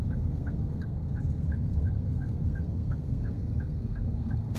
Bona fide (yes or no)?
no